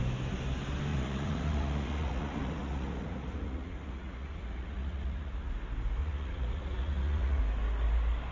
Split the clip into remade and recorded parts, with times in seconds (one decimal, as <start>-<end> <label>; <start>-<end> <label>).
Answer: 0.0-0.9 recorded; 0.9-5.5 remade; 5.5-6.0 recorded; 6.0-7.4 remade; 7.4-8.3 recorded